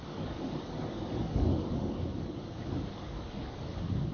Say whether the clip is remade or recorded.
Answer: remade